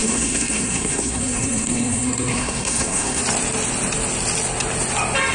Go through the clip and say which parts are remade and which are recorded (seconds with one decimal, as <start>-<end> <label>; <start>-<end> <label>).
0.0-3.2 remade; 3.2-5.3 recorded